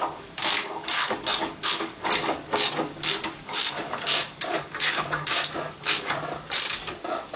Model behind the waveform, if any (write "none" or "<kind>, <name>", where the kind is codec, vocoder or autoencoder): codec, DAC